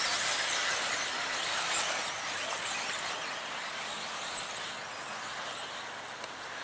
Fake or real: real